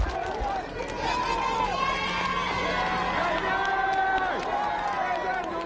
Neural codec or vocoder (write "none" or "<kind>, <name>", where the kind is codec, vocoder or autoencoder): none